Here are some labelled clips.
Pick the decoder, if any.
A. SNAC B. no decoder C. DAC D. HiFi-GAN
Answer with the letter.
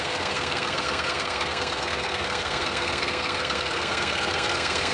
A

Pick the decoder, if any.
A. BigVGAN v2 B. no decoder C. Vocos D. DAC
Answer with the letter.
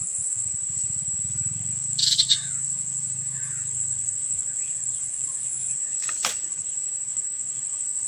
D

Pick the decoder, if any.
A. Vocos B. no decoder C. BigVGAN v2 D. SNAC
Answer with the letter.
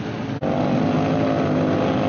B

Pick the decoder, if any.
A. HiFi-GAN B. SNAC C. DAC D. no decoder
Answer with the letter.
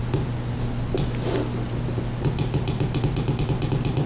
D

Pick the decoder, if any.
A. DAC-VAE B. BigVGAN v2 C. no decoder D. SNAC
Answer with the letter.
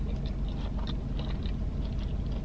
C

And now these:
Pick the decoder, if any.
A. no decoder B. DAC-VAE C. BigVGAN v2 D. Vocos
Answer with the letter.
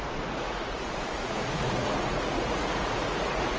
D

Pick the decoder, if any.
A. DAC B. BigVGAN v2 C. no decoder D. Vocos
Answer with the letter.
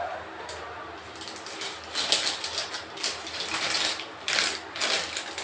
C